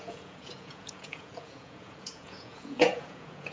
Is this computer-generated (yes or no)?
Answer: yes